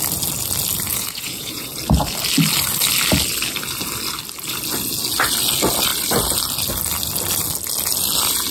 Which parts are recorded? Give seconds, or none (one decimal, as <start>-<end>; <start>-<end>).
0.0-0.9; 1.7-8.5